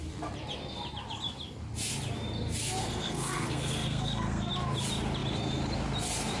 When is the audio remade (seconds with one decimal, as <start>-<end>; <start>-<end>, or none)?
2.8-4.5